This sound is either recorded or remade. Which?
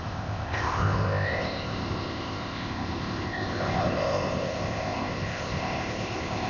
remade